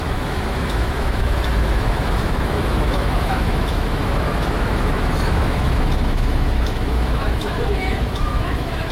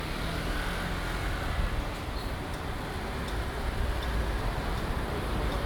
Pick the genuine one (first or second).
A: second